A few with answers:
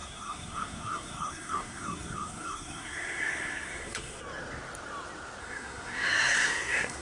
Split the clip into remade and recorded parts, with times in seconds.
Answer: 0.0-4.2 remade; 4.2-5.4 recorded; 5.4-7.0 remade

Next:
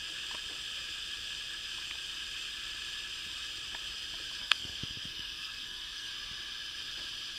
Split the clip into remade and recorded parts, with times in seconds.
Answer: 0.0-4.4 recorded; 4.4-6.1 remade; 6.1-7.4 recorded

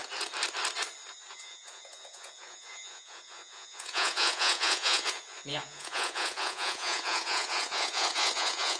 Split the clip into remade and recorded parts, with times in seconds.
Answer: 0.0-1.3 recorded; 1.3-8.8 remade

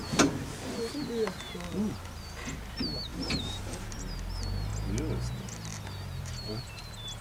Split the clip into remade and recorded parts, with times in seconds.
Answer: 0.0-3.1 recorded; 3.1-4.0 remade; 4.0-5.7 recorded; 5.7-6.8 remade; 6.8-7.2 recorded

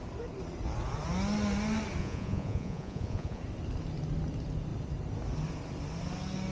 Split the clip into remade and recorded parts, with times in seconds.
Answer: 0.0-2.0 recorded; 2.0-3.4 remade; 3.4-6.5 recorded

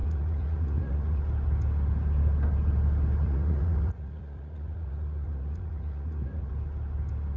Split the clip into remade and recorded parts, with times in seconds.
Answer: 0.0-1.2 remade; 1.2-3.2 recorded; 3.2-6.5 remade; 6.5-7.4 recorded

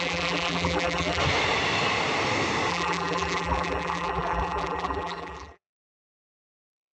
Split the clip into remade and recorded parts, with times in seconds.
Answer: 0.0-1.2 remade; 1.2-2.7 recorded; 2.7-6.9 remade

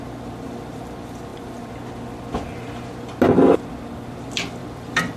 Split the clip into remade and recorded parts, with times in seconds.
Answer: 0.0-4.6 recorded; 4.6-5.2 remade